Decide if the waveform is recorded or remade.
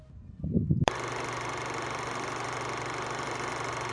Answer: recorded